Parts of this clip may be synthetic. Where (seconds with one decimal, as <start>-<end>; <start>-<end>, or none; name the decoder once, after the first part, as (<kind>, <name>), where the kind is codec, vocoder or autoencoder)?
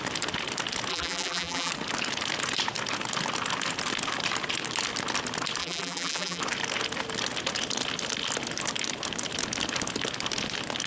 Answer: 0.9-1.7 (vocoder, BigVGAN v2); 5.6-6.4